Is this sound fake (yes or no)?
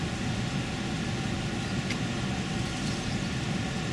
no